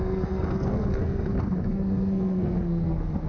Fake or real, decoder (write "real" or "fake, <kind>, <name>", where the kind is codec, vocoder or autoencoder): fake, codec, SNAC